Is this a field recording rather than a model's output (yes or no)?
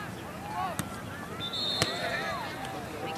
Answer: yes